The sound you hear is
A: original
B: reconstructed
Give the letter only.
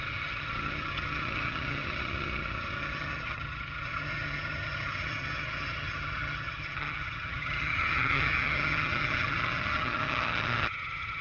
B